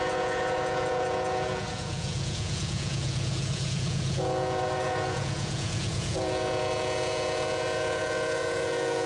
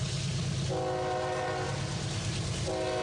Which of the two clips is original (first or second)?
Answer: second